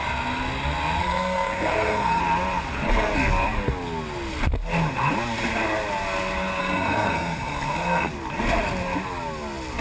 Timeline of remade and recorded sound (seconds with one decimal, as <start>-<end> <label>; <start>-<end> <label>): 0.0-1.0 recorded; 1.0-2.2 remade; 2.2-6.6 recorded; 6.6-8.1 remade; 8.1-9.8 recorded